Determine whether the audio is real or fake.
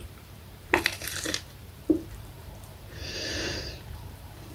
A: fake